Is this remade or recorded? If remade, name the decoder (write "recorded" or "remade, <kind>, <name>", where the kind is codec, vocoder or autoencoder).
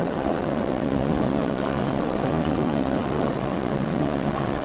remade, vocoder, WaveNeXt